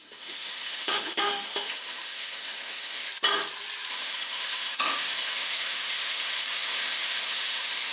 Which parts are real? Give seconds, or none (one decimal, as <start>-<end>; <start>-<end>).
3.1-3.9